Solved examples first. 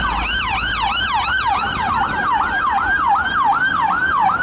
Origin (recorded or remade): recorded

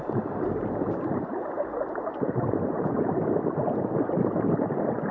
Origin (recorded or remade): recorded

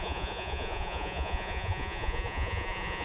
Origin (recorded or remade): remade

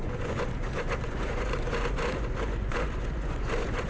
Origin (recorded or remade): remade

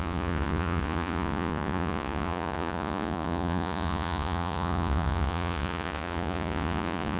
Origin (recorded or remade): remade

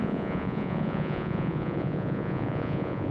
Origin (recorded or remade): remade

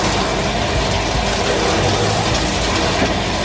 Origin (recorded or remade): recorded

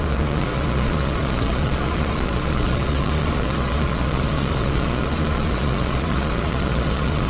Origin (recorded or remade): remade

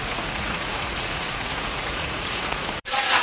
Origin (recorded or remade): remade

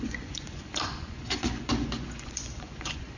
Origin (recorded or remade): remade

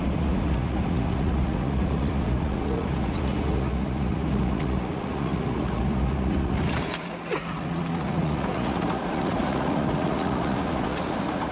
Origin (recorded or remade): remade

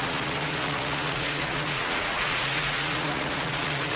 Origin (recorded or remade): remade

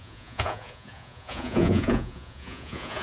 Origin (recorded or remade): remade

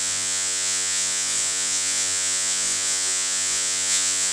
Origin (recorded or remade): remade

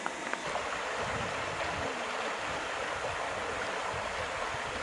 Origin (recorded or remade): recorded